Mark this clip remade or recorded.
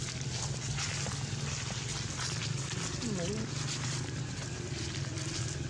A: recorded